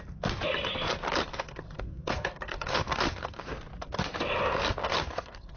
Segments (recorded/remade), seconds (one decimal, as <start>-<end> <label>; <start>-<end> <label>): 0.0-1.3 recorded; 1.3-3.4 remade; 3.4-4.8 recorded; 4.8-5.6 remade